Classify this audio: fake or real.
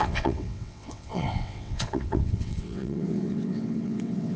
fake